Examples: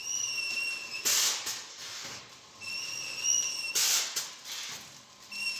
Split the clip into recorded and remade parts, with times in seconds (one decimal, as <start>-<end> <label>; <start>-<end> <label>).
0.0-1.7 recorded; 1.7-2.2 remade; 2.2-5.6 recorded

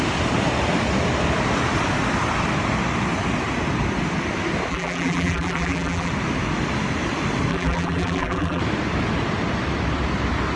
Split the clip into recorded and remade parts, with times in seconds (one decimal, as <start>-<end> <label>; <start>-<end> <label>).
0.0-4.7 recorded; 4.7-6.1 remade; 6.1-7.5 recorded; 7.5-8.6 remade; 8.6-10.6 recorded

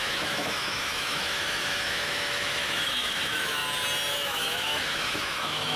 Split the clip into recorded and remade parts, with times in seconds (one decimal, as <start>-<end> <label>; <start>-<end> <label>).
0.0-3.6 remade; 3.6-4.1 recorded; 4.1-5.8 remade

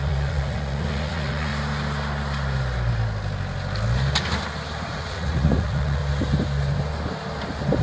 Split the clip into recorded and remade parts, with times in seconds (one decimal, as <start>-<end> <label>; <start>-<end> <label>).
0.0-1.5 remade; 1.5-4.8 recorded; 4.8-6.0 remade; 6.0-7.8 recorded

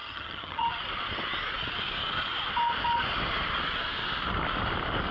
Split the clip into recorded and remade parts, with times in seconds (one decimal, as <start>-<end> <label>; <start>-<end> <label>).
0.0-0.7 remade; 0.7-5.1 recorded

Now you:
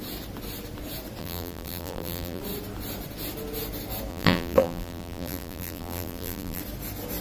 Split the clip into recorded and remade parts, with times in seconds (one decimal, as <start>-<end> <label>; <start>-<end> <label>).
0.0-1.2 recorded; 1.2-2.4 remade; 2.4-4.1 recorded; 4.1-6.6 remade; 6.6-7.2 recorded

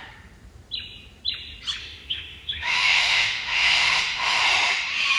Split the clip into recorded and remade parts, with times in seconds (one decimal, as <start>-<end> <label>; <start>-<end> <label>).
0.0-1.8 recorded; 1.8-4.4 remade; 4.4-5.2 recorded

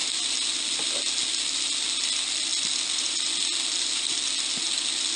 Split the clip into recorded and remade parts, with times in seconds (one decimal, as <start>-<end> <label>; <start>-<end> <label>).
0.0-5.2 recorded